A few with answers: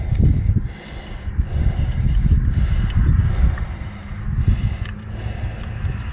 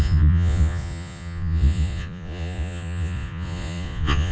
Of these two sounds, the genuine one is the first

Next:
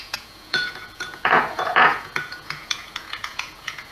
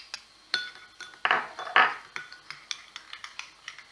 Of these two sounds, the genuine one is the second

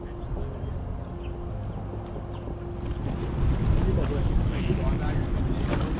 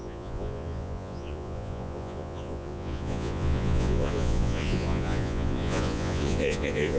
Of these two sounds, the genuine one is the first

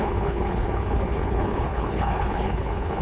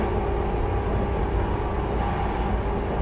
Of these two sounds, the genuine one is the second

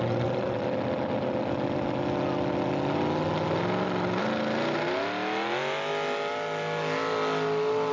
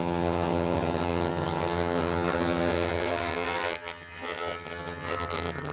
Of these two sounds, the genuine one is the first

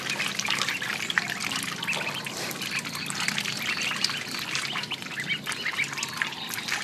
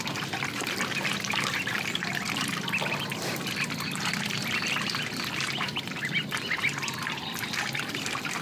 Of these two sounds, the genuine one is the first